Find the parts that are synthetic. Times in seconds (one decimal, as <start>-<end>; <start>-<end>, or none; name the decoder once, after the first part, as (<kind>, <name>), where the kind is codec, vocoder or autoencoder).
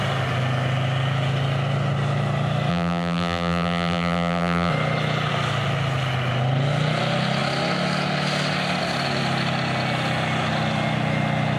2.7-4.7 (vocoder, BigVGAN v2)